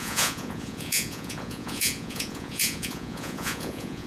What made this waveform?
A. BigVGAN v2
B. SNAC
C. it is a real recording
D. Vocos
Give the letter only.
D